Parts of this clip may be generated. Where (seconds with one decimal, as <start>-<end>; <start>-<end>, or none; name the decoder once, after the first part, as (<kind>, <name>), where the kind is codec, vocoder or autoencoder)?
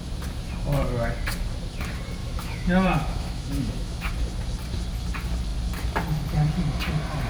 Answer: 2.2-4.1 (autoencoder, DAC-VAE)